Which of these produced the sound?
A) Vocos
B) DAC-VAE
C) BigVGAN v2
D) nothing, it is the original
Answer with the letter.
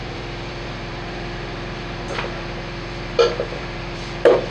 C